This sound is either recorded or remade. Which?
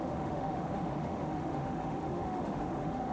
remade